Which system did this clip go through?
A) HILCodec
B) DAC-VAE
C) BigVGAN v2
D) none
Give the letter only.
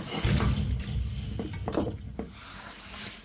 D